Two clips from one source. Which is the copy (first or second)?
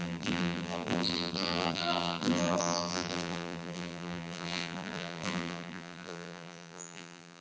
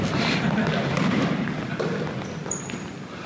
first